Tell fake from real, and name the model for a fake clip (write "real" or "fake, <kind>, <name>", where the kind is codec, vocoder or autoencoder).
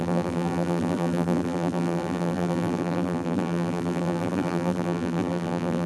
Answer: fake, vocoder, BigVGAN v2